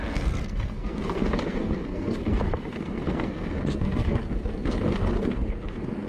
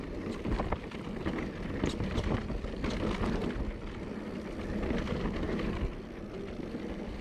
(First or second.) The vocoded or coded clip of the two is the first